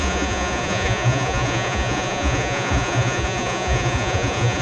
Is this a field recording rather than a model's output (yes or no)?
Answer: no